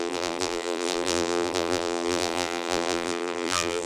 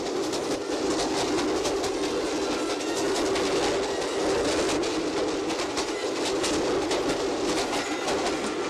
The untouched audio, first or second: second